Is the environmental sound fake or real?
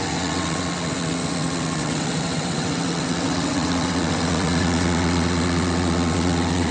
fake